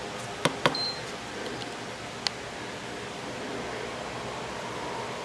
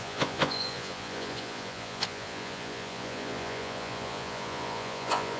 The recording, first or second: first